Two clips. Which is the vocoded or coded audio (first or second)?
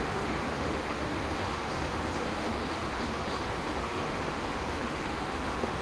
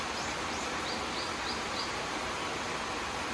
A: first